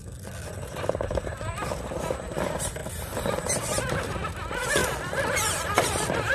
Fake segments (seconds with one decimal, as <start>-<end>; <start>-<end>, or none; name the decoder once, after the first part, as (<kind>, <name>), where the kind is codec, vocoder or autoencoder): 2.8-3.8 (vocoder, BigVGAN v2); 4.8-6.3